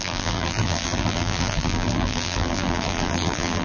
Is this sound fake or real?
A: fake